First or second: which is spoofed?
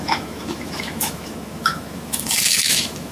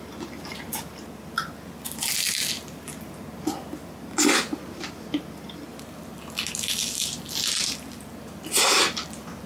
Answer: first